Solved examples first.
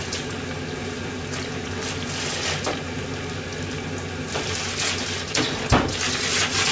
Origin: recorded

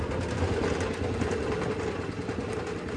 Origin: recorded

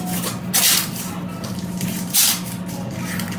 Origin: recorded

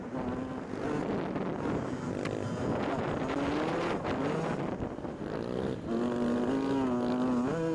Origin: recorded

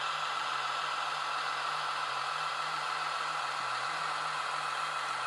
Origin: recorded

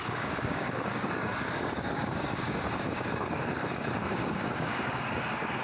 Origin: remade